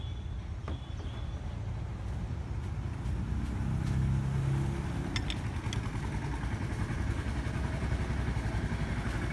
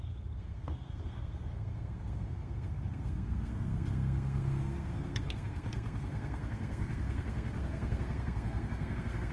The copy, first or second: second